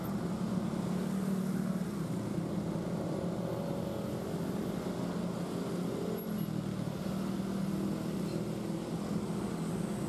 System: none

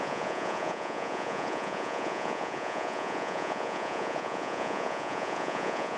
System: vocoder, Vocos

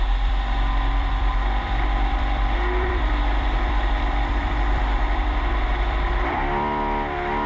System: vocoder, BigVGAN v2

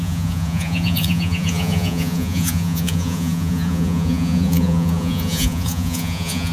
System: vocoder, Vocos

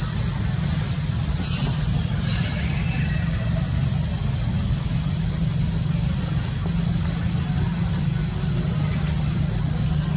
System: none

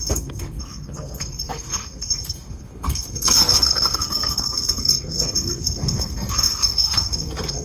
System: codec, SNAC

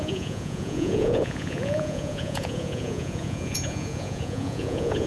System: vocoder, Vocos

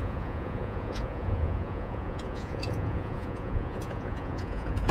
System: vocoder, Vocos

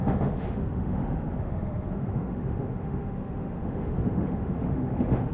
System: autoencoder, DAC-VAE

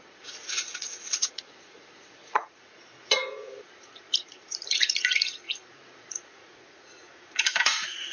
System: vocoder, Vocos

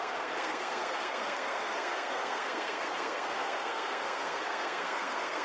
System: codec, SNAC